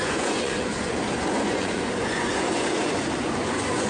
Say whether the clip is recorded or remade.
remade